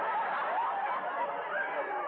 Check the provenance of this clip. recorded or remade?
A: recorded